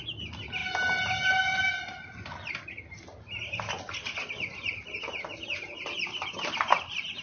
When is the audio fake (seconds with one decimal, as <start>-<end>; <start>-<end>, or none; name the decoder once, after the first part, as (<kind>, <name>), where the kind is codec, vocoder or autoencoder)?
none